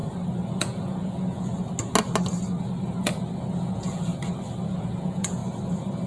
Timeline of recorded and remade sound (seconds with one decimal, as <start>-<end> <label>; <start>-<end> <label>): 0.0-0.6 recorded; 0.6-1.5 remade; 1.5-3.5 recorded; 3.5-4.1 remade; 4.1-4.7 recorded; 4.7-5.4 remade; 5.4-6.1 recorded

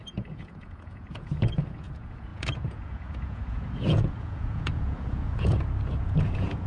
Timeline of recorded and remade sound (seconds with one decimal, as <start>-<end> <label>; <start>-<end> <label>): 0.0-5.5 remade; 5.5-6.0 recorded; 6.0-6.7 remade

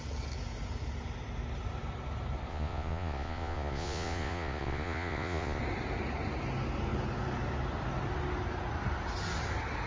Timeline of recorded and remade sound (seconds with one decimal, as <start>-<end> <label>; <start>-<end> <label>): 0.0-2.5 recorded; 2.5-5.6 remade; 5.6-9.9 recorded

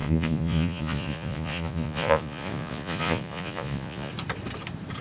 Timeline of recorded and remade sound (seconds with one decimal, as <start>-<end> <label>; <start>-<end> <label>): 0.0-4.1 remade; 4.1-5.0 recorded

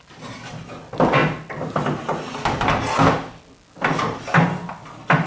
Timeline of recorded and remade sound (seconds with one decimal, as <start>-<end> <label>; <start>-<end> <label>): 0.0-5.3 recorded

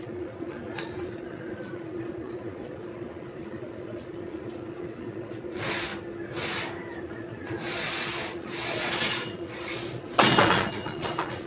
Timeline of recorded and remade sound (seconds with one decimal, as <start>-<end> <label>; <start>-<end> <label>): 0.0-5.9 remade; 5.9-7.0 recorded; 7.0-11.5 remade

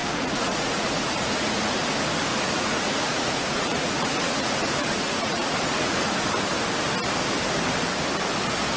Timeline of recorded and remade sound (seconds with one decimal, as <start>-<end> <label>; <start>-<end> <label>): 0.0-1.8 remade; 1.8-2.3 recorded; 2.3-6.1 remade; 6.1-8.8 recorded